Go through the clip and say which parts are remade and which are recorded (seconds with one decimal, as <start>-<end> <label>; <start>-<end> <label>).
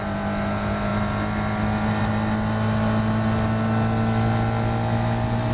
0.0-5.5 recorded